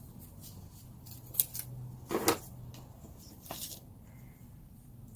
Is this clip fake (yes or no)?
no